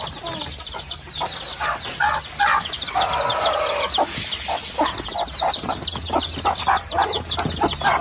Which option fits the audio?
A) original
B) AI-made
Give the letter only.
A